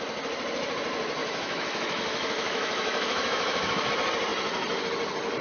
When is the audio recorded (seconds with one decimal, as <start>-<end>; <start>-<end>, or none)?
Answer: 0.0-1.2; 3.9-5.4